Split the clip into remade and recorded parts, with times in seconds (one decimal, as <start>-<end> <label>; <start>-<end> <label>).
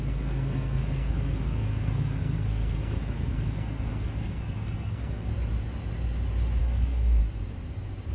0.0-5.3 remade; 5.3-6.6 recorded; 6.6-7.2 remade; 7.2-8.1 recorded